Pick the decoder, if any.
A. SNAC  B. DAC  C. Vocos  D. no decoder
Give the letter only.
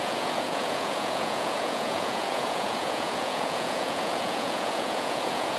C